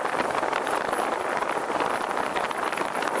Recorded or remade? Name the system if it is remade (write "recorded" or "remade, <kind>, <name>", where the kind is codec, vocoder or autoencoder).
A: remade, vocoder, BigVGAN v2